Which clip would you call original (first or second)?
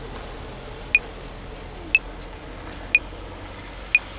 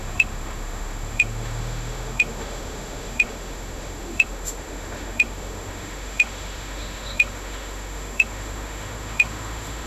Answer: first